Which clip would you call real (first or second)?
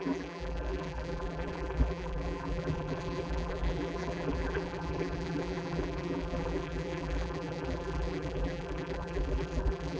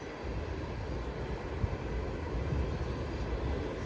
second